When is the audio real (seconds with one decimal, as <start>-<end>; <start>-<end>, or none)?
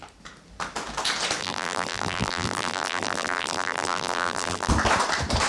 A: 0.0-1.4; 4.7-5.5